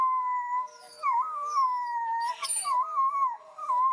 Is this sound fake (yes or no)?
yes